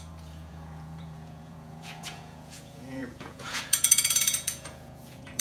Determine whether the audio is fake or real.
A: fake